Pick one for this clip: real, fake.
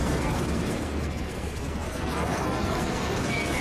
fake